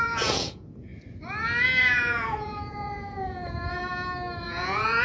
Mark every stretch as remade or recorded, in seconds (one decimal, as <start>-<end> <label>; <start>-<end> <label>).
0.0-0.9 remade; 0.9-1.8 recorded; 1.8-3.8 remade; 3.8-4.4 recorded; 4.4-5.0 remade